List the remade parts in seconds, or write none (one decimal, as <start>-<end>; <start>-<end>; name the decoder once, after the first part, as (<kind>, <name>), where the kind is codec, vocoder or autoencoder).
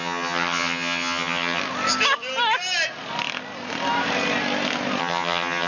0.0-1.6 (vocoder, HiFi-GAN); 5.0-5.7